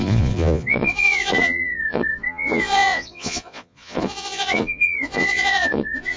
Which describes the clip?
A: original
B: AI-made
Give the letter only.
B